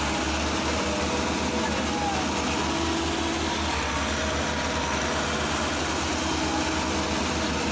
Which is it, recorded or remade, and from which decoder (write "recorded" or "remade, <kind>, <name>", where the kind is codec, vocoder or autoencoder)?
recorded